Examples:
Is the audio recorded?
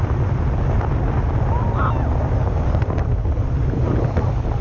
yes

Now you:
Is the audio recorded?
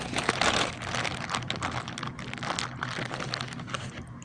yes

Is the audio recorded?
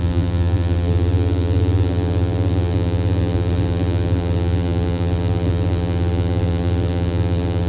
no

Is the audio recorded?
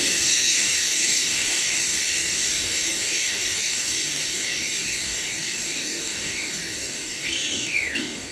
no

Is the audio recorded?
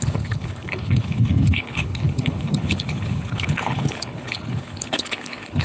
no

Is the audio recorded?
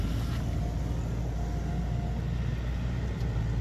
yes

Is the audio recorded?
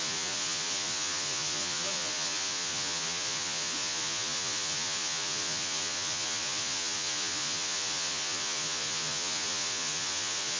no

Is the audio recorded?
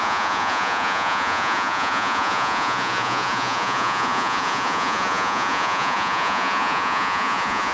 no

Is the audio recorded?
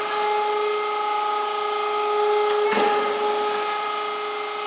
yes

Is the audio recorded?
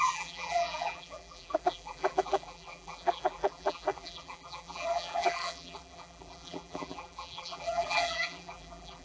no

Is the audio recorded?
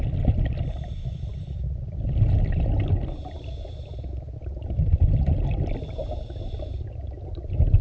yes